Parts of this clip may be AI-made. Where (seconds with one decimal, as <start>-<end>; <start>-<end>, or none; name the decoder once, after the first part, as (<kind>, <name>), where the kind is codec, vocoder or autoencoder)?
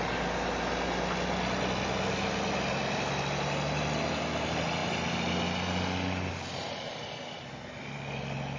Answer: none